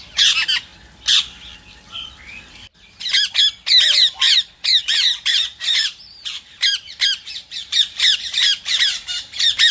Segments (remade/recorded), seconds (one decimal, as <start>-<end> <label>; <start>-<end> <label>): 0.0-0.7 remade; 0.7-3.8 recorded; 3.8-9.7 remade